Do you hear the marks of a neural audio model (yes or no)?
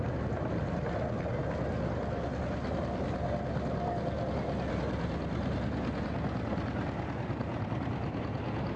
no